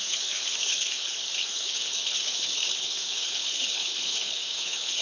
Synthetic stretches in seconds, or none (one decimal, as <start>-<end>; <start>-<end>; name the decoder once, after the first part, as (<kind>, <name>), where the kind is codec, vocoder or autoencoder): 0.0-5.0 (codec, HILCodec)